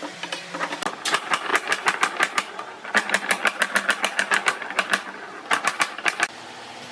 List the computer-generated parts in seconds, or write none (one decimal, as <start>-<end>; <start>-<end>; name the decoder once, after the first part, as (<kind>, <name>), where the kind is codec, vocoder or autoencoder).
none